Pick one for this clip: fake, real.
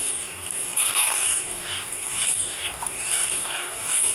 fake